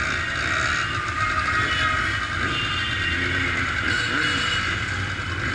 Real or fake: real